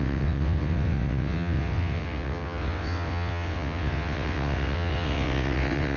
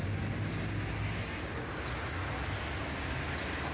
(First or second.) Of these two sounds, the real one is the second